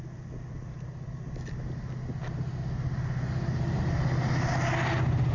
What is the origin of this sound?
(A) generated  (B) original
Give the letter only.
B